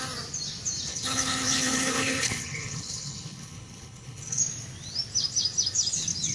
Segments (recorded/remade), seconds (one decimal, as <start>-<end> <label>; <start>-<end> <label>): 0.0-0.9 recorded; 0.9-4.4 remade; 4.4-6.3 recorded